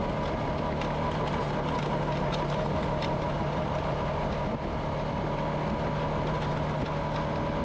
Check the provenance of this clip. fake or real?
real